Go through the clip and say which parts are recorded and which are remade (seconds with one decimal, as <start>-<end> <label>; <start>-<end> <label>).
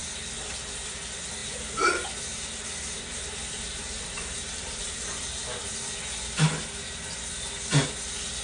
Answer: 0.0-1.4 recorded; 1.4-4.8 remade; 4.8-8.4 recorded